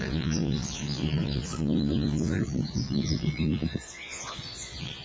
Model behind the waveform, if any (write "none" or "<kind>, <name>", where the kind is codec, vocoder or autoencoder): vocoder, Vocos